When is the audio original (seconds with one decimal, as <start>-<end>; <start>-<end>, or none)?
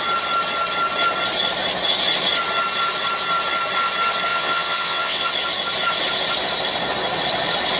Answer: 0.0-4.3; 5.3-7.8